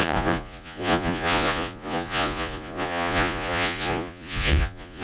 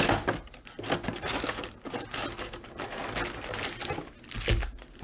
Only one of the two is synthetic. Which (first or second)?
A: first